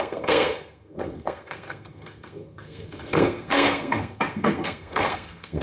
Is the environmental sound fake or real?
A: fake